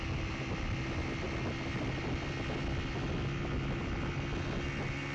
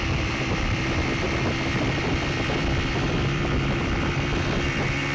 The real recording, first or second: first